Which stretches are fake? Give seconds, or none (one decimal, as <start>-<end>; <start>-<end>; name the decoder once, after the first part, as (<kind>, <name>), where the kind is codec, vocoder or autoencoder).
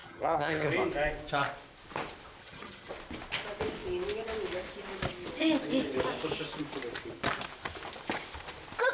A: 0.0-0.7 (vocoder, HiFi-GAN); 2.4-2.9